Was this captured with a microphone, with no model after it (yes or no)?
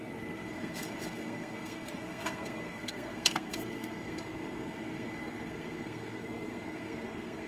no